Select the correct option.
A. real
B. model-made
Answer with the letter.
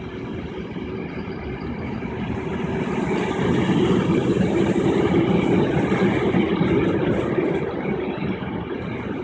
A